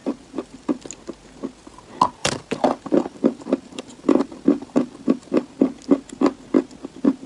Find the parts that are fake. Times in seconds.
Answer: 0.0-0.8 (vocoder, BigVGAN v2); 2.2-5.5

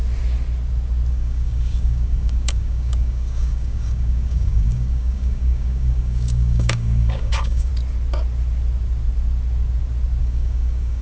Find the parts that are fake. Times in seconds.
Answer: 1.1-7.7 (codec, DAC); 10.2-11.0

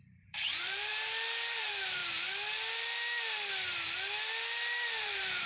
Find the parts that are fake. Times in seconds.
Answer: 0.0-0.9 (vocoder, BigVGAN v2); 1.6-2.0; 5.0-5.5

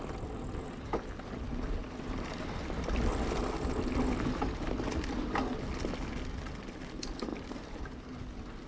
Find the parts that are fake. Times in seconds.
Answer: none

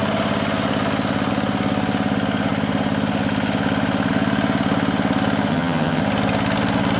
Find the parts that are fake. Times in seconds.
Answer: 5.5-6.0 (vocoder, HiFi-GAN)

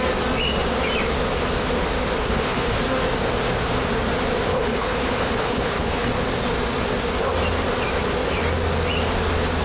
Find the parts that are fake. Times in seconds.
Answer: 2.2-2.8 (codec, HILCodec); 4.5-6.1